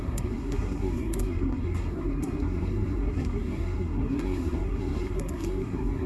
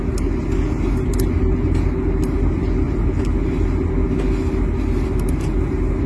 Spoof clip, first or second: first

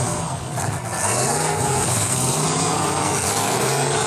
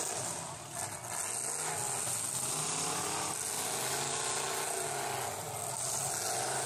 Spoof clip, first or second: first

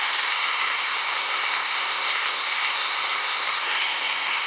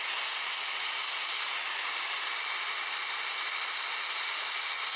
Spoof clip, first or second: first